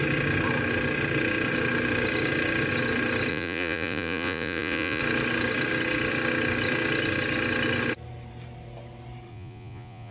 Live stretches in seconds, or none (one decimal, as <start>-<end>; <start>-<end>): 0.0-3.3; 5.0-9.3